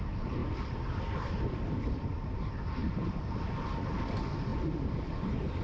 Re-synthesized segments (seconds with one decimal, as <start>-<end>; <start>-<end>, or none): none